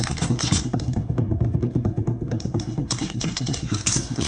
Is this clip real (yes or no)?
no